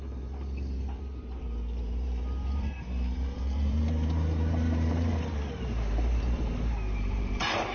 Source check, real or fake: fake